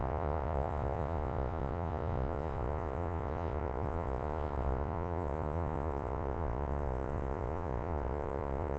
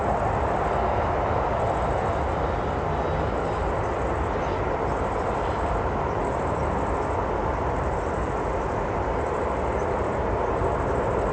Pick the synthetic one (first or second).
first